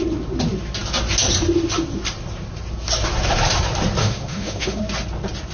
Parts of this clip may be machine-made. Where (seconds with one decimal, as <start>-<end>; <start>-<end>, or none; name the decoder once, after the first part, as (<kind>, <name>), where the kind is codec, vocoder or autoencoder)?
4.0-4.8 (autoencoder, DAC-VAE)